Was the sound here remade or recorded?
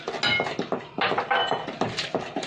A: recorded